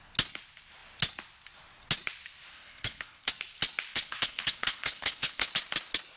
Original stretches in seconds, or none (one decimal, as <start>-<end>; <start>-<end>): 0.0-2.5; 3.3-3.9; 5.5-6.2